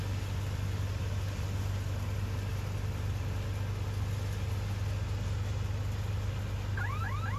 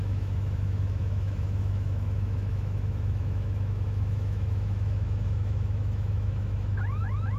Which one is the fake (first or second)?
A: second